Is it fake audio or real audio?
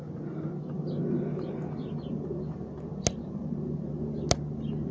real